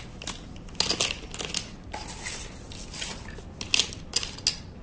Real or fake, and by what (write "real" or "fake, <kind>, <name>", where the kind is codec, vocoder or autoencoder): real